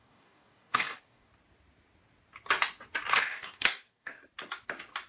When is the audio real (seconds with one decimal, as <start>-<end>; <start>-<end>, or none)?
1.3-3.1; 4.2-5.1